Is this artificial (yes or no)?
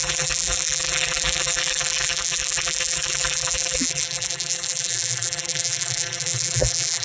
yes